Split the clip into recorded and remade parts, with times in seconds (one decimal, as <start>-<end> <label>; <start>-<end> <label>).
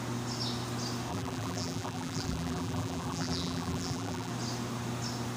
0.0-1.1 recorded; 1.1-4.3 remade; 4.3-5.4 recorded